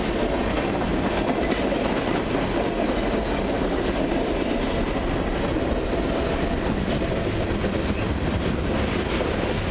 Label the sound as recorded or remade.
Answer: recorded